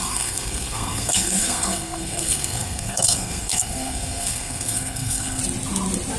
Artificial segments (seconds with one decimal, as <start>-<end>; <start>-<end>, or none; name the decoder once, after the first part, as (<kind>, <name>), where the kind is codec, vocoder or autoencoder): 0.0-5.4 (codec, SNAC)